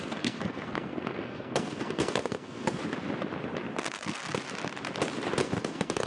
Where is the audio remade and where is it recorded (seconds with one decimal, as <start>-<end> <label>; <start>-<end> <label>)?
0.0-2.8 remade; 2.8-3.8 recorded; 3.8-4.2 remade; 4.2-5.4 recorded; 5.4-6.1 remade